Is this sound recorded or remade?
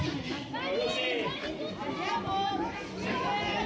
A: recorded